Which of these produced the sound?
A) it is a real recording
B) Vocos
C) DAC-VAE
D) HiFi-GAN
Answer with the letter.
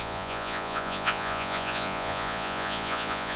B